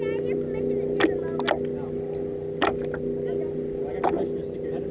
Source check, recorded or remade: recorded